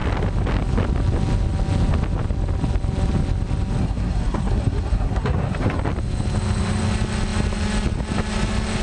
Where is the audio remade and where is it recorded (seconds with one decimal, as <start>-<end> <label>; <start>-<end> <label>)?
0.0-3.8 recorded; 3.8-5.8 remade; 5.8-8.8 recorded